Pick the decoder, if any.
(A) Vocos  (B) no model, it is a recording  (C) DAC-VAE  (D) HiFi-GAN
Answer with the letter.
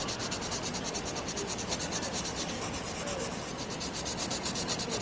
B